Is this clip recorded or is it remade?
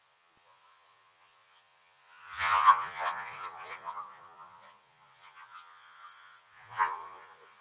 remade